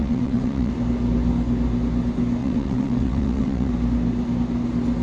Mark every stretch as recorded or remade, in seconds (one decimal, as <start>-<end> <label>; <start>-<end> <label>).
0.0-0.7 remade; 0.7-2.4 recorded; 2.4-3.7 remade; 3.7-5.0 recorded

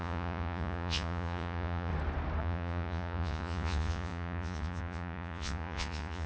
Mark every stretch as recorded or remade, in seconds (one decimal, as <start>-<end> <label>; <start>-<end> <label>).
0.0-1.9 remade; 1.9-2.4 recorded; 2.4-6.3 remade

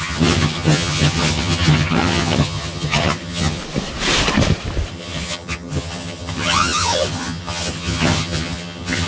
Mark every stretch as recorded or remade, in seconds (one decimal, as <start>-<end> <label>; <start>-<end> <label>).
0.0-3.6 remade; 3.6-4.9 recorded; 4.9-9.1 remade

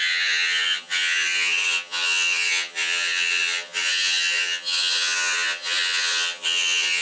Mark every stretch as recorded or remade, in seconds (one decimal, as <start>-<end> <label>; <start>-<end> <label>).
0.0-7.0 remade

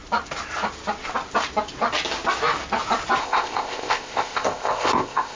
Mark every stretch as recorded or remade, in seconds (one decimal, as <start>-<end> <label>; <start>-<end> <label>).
0.0-3.2 recorded; 3.2-5.4 remade

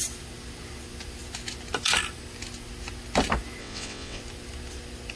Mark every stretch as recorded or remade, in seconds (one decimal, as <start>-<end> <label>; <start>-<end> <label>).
0.0-3.6 recorded; 3.6-4.2 remade; 4.2-5.2 recorded

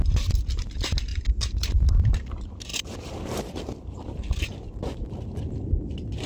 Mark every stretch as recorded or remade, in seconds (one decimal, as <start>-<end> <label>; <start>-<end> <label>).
0.0-1.1 recorded; 1.1-1.8 remade; 1.8-2.7 recorded; 2.7-5.0 remade; 5.0-6.3 recorded

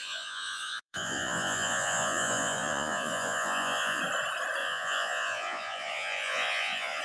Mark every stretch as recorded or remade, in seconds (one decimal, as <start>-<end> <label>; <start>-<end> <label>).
0.0-4.0 remade; 4.0-4.6 recorded; 4.6-7.0 remade